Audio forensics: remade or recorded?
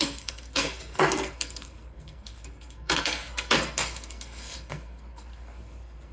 remade